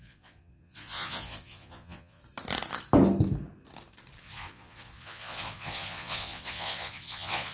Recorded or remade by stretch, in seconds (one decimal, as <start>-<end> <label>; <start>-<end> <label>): 0.0-2.2 remade; 2.2-4.2 recorded; 4.2-7.5 remade